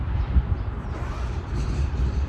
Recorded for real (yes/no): no